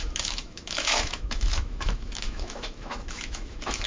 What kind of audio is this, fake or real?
fake